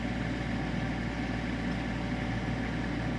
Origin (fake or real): real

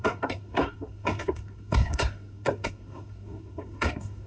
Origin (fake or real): fake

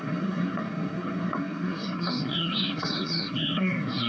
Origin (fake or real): fake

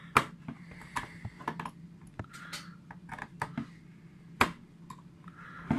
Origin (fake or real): real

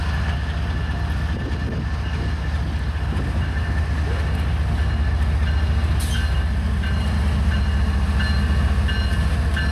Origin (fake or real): real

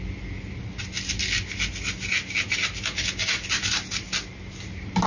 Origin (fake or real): real